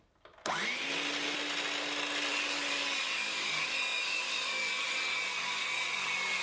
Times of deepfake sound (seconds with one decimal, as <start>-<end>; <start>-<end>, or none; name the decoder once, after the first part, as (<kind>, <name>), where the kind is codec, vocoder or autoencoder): 2.3-6.4 (codec, DAC)